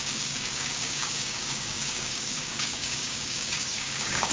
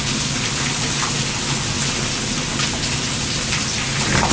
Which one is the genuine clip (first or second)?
second